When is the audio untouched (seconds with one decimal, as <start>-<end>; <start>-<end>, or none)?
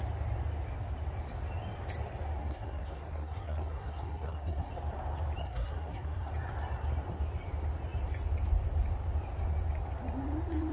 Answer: 0.0-2.4; 4.7-5.4; 6.3-10.7